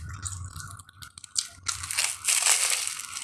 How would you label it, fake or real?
real